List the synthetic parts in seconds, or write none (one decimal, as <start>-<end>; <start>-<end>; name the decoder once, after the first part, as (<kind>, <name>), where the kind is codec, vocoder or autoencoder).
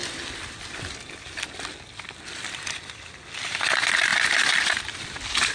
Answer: none